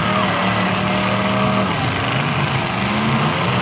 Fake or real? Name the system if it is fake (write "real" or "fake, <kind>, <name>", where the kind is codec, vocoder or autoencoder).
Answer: real